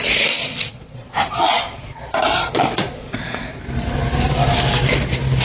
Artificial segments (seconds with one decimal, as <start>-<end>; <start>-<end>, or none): 0.4-3.6